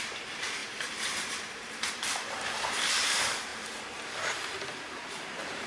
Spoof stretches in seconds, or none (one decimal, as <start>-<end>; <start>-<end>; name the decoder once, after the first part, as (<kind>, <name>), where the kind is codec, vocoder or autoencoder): 0.0-5.7 (vocoder, BigVGAN v2)